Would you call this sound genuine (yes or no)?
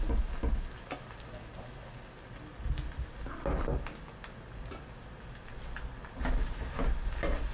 yes